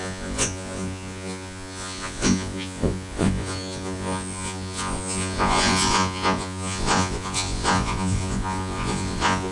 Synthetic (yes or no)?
yes